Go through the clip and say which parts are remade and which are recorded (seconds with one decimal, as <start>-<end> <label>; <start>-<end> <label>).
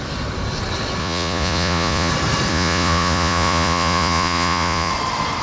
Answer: 0.0-1.0 recorded; 1.0-2.1 remade; 2.1-2.5 recorded; 2.5-4.9 remade; 4.9-5.4 recorded